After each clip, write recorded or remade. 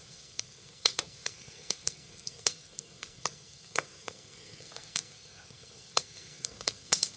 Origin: remade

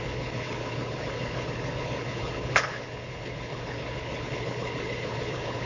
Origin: remade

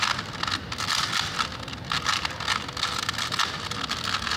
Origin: recorded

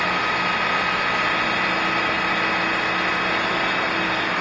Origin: recorded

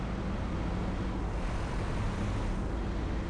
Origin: recorded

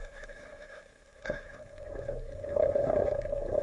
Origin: remade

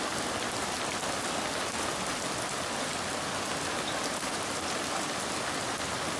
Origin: recorded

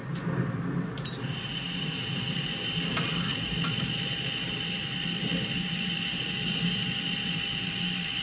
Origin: remade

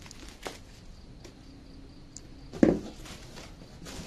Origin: recorded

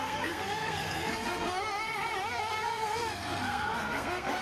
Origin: remade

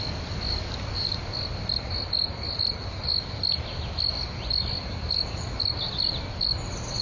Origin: recorded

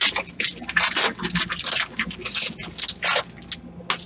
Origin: recorded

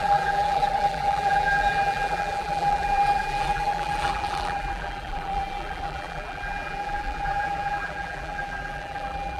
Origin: remade